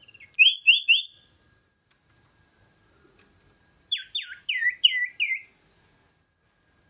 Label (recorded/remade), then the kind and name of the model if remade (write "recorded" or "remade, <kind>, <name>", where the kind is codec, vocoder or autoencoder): recorded